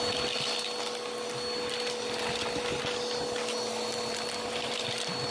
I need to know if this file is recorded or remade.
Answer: recorded